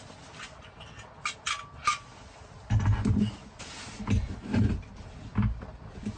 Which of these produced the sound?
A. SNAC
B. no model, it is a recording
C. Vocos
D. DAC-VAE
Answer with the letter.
B